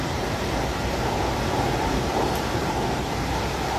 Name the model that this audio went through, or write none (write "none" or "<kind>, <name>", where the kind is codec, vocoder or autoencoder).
vocoder, BigVGAN v2